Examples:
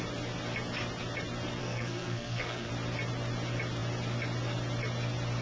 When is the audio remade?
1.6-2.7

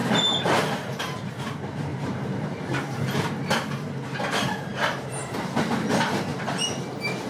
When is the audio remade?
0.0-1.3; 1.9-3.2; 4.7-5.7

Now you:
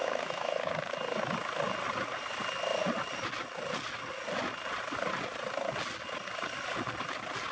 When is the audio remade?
0.0-0.7

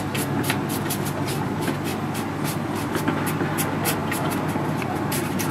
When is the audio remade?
1.9-3.0; 4.0-5.5

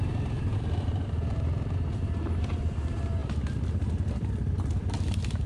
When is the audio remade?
0.0-3.2; 4.1-5.5